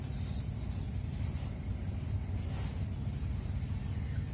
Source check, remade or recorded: recorded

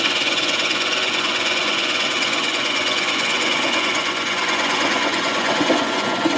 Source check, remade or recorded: remade